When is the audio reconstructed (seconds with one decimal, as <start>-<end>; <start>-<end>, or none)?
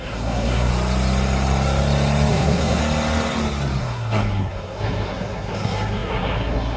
0.0-0.7; 2.3-2.8; 3.8-6.8